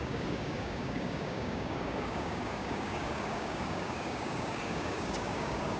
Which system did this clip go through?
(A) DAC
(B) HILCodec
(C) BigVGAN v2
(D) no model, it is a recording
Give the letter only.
A